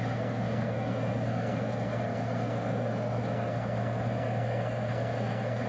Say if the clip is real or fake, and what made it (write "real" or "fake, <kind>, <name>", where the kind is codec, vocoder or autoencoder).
fake, codec, SNAC